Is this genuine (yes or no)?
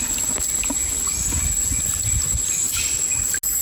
yes